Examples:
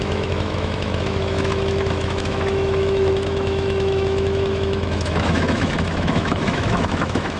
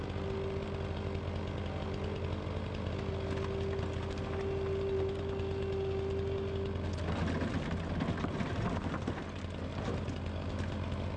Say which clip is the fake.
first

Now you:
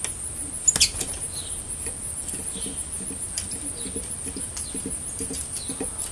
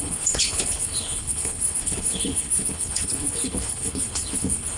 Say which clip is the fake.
second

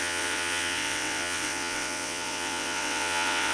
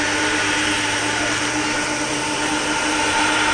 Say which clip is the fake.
first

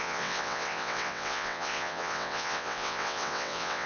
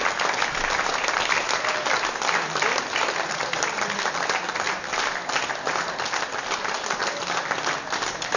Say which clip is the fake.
first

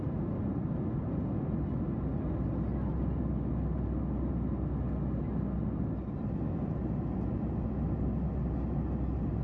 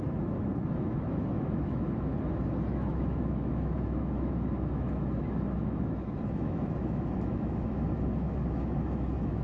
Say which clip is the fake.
second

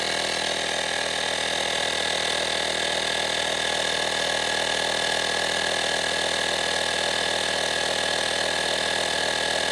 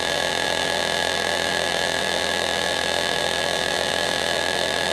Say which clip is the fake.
second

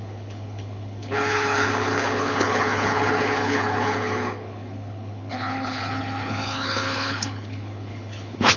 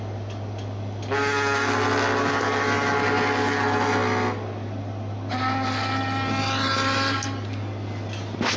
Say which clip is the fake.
first